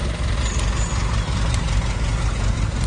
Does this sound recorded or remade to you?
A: recorded